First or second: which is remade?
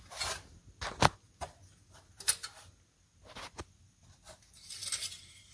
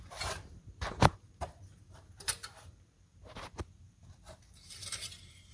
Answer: second